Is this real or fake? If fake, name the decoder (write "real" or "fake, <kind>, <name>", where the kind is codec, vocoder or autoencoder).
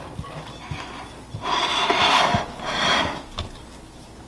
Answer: real